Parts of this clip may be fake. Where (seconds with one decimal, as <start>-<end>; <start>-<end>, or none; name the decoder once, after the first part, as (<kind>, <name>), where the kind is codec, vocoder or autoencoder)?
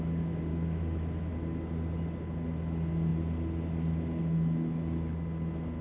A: 0.5-1.3 (autoencoder, DAC-VAE)